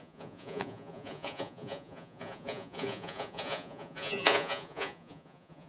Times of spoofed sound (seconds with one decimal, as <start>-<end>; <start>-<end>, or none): 0.0-5.7